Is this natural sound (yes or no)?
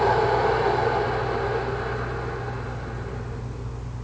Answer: yes